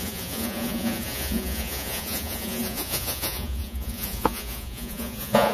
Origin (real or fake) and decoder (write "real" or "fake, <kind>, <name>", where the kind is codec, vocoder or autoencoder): fake, vocoder, Vocos